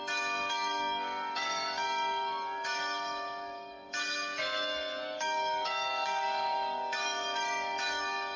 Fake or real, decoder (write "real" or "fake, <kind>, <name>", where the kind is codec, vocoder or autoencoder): fake, codec, DAC